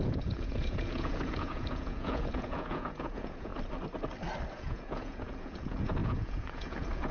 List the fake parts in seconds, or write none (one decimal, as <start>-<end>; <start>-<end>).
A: 0.0-3.5; 4.5-7.1